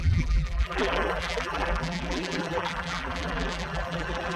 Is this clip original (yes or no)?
no